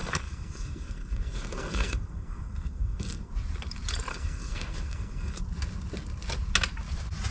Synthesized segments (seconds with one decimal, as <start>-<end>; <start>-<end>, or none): 0.0-3.3; 4.1-5.4